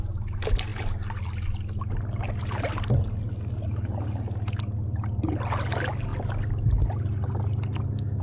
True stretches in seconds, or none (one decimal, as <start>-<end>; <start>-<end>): 0.0-8.2